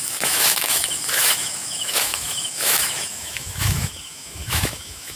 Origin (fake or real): fake